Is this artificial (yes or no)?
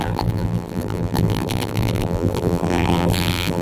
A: yes